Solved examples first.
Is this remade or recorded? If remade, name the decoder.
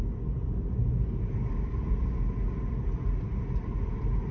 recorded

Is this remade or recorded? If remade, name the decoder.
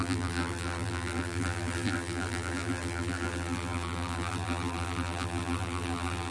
remade, vocoder, BigVGAN v2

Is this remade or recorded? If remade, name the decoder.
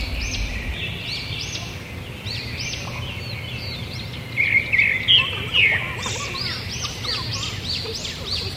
recorded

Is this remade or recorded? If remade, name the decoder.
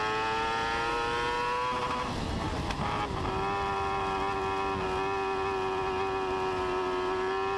recorded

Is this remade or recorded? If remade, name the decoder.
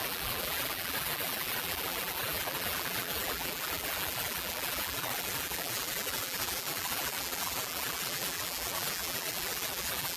remade, vocoder, BigVGAN v2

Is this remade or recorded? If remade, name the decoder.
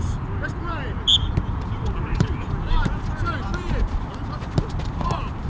remade, vocoder, BigVGAN v2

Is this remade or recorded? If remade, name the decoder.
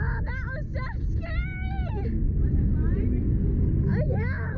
recorded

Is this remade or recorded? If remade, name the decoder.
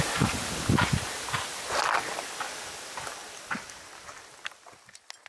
recorded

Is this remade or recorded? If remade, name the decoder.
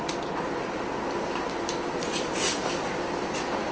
remade, vocoder, BigVGAN v2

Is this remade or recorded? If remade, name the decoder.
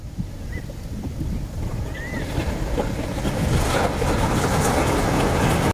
recorded